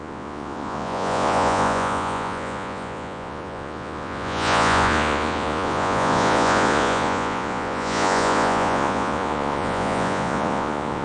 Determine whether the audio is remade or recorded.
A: remade